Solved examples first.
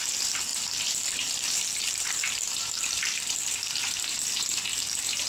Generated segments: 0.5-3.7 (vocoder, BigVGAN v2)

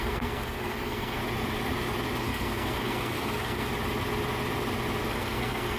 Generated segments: 0.0-1.2 (codec, SNAC); 2.2-3.7; 5.1-5.8

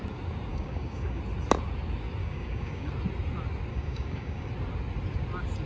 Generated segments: 0.5-1.2 (codec, DAC); 2.2-2.9; 3.7-4.5

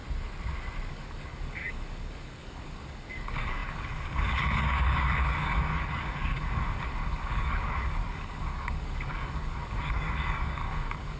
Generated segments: 0.9-11.2 (codec, DAC)

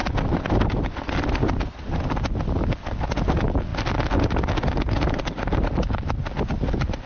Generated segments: none